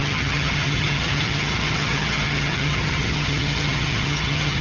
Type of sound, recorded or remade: remade